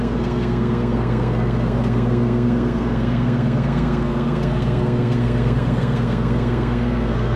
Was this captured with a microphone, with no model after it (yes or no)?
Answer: no